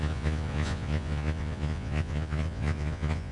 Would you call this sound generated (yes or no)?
yes